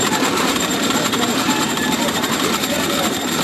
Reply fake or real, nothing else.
fake